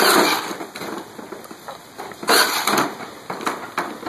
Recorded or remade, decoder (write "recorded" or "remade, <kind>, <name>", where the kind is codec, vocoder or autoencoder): recorded